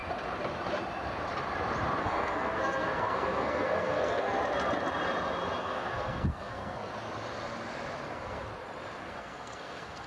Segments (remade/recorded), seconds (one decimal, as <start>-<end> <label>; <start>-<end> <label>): 0.0-2.0 recorded; 2.0-4.4 remade; 4.4-5.6 recorded; 5.6-6.9 remade; 6.9-8.1 recorded; 8.1-8.5 remade; 8.5-9.0 recorded; 9.0-10.1 remade